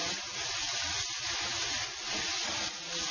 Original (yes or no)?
yes